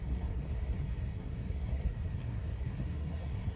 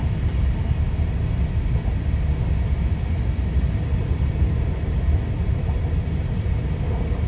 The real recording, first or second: second